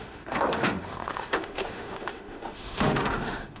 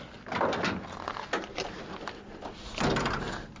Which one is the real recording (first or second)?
second